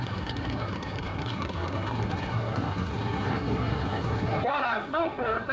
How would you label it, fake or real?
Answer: fake